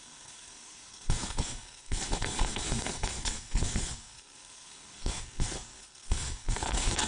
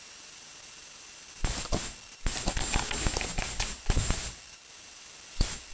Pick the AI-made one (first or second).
first